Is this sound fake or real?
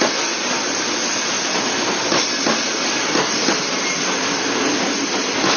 real